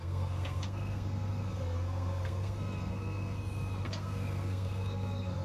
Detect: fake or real fake